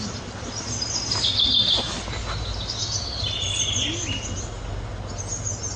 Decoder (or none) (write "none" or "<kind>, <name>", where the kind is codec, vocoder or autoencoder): none